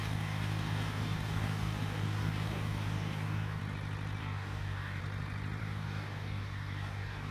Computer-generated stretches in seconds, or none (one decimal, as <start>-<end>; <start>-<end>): 0.0-3.6; 4.2-5.0; 5.6-7.3